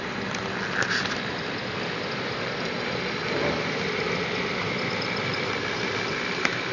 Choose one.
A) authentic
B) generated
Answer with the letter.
A